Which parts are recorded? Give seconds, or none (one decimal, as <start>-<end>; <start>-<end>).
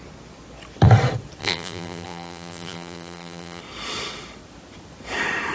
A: 0.0-1.4; 3.6-5.5